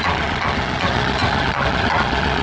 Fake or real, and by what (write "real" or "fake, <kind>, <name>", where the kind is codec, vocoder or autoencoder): fake, vocoder, Vocos